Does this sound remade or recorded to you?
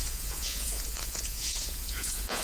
remade